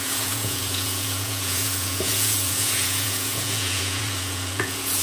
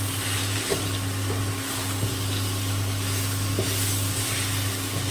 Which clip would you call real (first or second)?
second